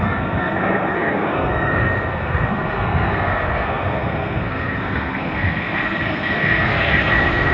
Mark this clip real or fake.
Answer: fake